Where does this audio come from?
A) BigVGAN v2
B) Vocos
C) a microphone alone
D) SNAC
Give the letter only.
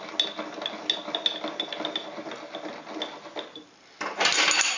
C